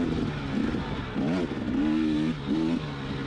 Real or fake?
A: real